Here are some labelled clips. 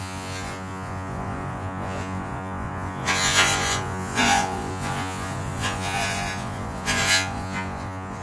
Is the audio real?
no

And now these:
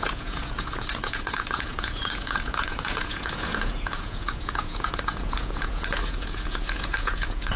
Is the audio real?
no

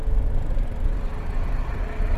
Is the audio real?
yes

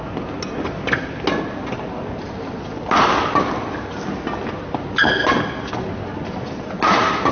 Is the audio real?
yes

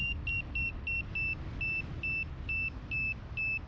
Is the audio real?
yes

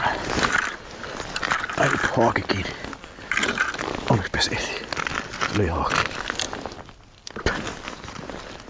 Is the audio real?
yes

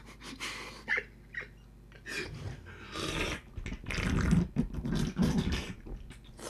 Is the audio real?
yes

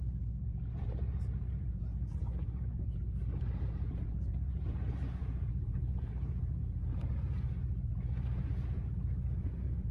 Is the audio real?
no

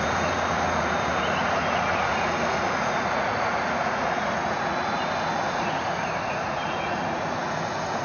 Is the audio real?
no